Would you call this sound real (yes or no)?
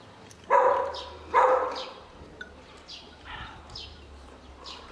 no